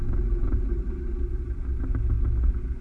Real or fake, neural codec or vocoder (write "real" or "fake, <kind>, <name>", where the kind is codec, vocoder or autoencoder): real